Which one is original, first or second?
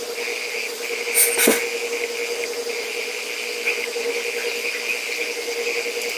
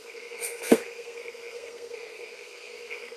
first